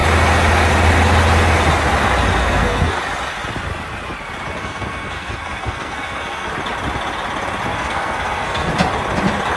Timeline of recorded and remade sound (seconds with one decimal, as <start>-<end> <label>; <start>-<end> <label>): 0.0-2.4 recorded; 2.4-3.0 remade; 3.0-4.6 recorded; 4.6-6.5 remade; 6.5-7.7 recorded; 7.7-8.7 remade; 8.7-9.6 recorded